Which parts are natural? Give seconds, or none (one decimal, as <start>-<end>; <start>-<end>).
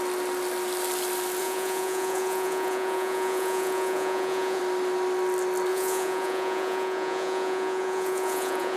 0.0-1.4; 4.6-5.7